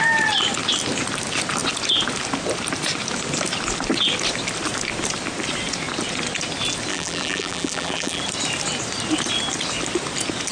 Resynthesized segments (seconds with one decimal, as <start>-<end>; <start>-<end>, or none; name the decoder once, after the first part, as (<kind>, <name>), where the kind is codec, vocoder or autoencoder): 6.9-8.2 (vocoder, BigVGAN v2)